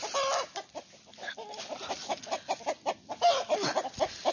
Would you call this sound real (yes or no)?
yes